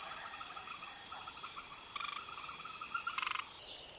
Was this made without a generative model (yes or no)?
yes